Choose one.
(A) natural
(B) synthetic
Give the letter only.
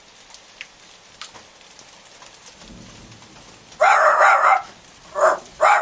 A